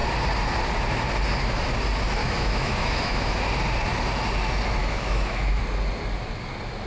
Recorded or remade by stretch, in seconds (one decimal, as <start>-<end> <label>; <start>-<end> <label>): 0.0-2.2 recorded; 2.2-3.4 remade; 3.4-4.8 recorded; 4.8-5.6 remade; 5.6-6.9 recorded